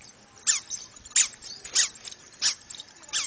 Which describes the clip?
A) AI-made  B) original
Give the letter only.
B